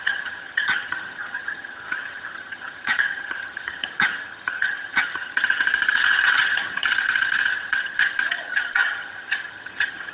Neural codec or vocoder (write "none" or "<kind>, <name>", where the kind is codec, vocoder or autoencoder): vocoder, HiFi-GAN